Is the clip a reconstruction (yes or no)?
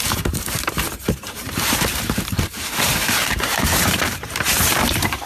yes